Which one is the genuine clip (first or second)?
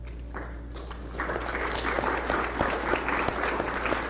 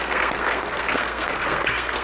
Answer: first